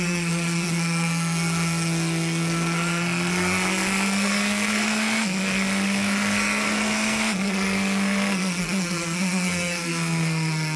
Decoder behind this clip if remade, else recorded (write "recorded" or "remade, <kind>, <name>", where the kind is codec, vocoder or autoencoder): remade, codec, SNAC